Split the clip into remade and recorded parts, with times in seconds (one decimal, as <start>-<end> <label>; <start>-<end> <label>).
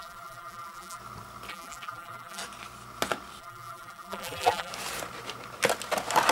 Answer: 0.0-1.0 remade; 1.0-1.5 recorded; 1.5-2.4 remade; 2.4-3.4 recorded; 3.4-4.7 remade; 4.7-6.3 recorded